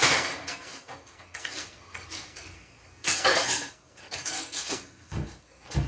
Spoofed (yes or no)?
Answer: yes